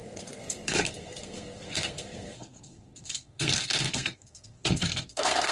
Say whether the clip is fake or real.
fake